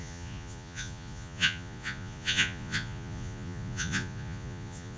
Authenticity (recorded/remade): remade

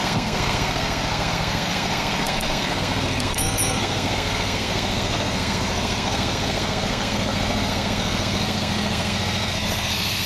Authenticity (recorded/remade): remade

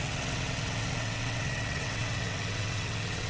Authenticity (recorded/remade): remade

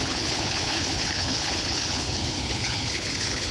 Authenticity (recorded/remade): remade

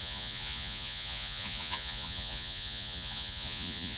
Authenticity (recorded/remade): remade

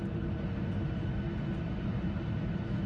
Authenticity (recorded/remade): recorded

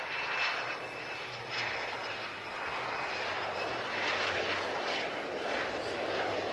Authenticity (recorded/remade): recorded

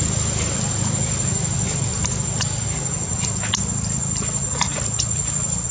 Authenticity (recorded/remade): recorded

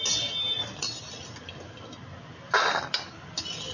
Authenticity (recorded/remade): recorded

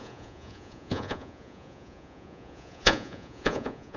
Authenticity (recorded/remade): remade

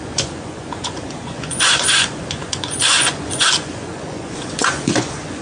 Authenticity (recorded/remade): remade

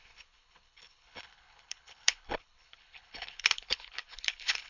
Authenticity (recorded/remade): remade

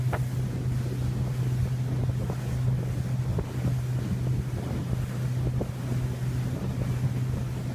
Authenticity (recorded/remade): recorded